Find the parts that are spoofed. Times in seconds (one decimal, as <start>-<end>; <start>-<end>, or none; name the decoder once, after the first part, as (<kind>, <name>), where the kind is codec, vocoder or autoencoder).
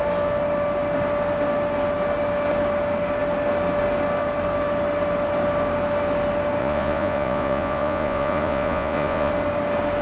6.6-9.3 (vocoder, Vocos)